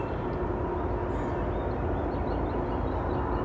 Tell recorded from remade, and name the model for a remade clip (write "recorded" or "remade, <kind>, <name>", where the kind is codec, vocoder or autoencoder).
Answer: recorded